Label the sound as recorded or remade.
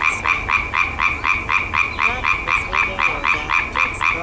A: recorded